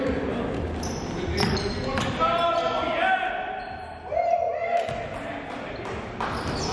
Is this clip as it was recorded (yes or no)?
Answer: yes